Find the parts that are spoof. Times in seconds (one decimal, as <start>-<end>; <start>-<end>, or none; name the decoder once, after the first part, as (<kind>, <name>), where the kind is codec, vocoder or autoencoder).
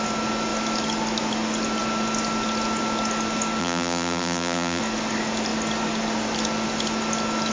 3.6-4.8 (vocoder, BigVGAN v2)